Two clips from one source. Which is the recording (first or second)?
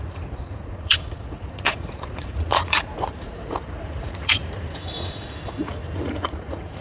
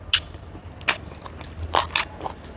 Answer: second